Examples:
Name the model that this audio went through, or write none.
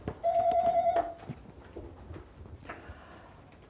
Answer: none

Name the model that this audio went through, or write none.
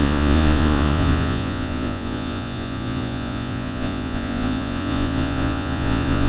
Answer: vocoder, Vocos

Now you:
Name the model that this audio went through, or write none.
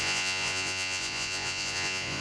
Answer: vocoder, Vocos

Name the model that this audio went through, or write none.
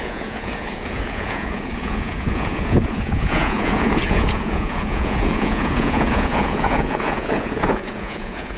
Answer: vocoder, Vocos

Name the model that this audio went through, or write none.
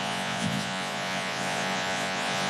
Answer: vocoder, Vocos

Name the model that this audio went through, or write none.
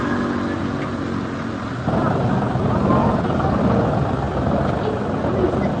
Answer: none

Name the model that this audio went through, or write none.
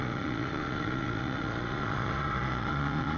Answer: vocoder, Vocos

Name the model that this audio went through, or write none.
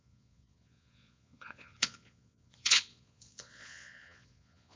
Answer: vocoder, Vocos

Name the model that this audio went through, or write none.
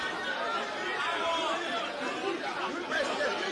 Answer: none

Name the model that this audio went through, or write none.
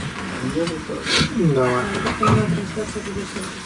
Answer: none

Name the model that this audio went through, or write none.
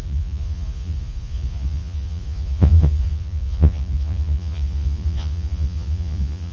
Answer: vocoder, Vocos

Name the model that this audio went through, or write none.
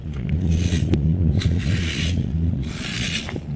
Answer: vocoder, Vocos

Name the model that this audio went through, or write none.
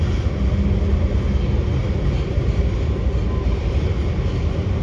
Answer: none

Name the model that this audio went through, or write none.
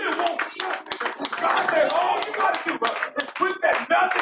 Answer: none